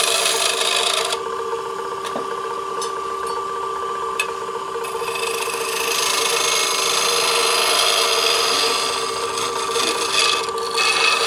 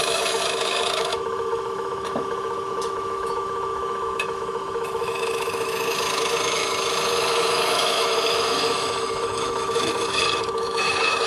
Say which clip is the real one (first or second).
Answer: first